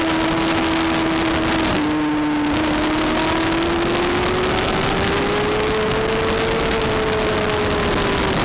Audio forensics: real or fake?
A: real